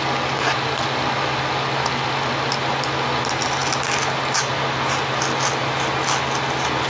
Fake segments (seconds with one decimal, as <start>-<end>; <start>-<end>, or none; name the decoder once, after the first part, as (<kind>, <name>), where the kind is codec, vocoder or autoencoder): none